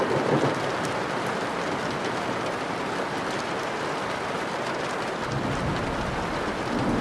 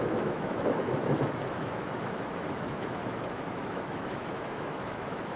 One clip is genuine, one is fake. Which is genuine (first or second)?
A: first